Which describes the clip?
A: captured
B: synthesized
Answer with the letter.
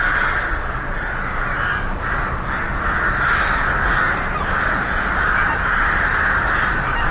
A